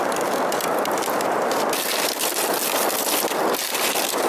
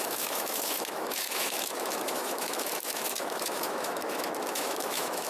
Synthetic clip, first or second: second